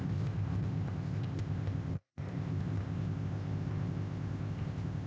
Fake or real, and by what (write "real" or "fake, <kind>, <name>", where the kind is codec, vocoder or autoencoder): fake, codec, ZipCodec